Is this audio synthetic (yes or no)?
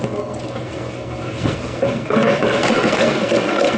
yes